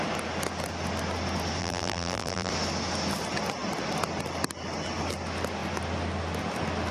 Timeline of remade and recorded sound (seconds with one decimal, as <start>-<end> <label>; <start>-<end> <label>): 0.0-1.6 recorded; 1.6-2.5 remade; 2.5-6.9 recorded